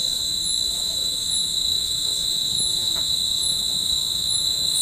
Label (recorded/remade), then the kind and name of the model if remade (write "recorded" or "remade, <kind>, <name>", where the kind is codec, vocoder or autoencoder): remade, autoencoder, DAC-VAE